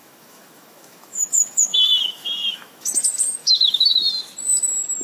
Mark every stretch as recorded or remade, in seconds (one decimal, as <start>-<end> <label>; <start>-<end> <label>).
0.0-3.0 remade; 3.0-3.4 recorded; 3.4-4.1 remade; 4.1-5.0 recorded